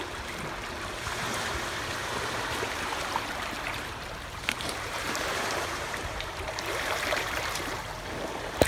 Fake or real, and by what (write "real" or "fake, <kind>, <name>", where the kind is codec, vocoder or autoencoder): fake, vocoder, BigVGAN v2